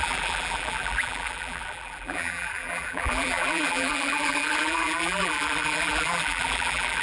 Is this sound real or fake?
fake